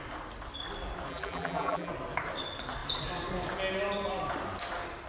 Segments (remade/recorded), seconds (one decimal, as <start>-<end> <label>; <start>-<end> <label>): 0.0-1.1 recorded; 1.1-1.9 remade; 1.9-5.1 recorded